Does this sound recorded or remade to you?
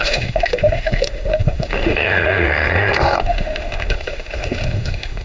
remade